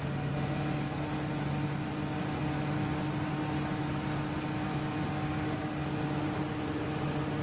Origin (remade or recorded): recorded